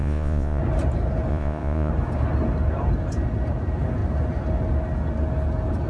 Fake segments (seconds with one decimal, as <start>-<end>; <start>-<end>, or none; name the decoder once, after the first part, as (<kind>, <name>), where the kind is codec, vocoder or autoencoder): 0.0-0.6 (vocoder, Vocos); 1.3-1.9